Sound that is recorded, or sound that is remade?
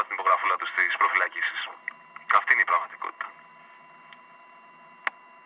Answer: recorded